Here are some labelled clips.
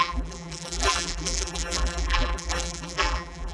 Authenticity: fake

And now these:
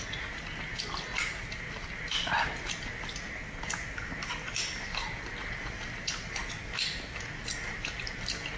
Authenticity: real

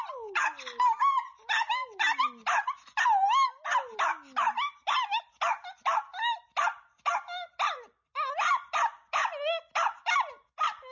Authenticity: real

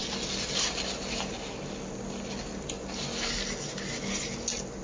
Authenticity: real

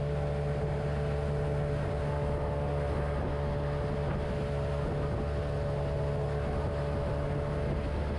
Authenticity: real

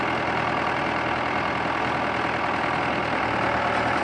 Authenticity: real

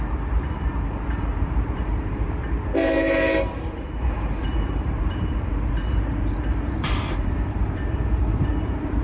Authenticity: fake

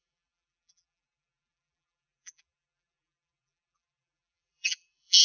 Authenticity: fake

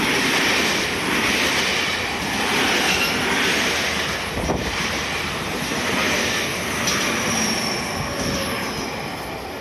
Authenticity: real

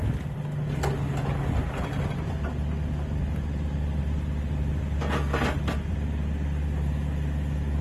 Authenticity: real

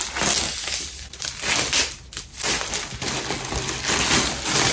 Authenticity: real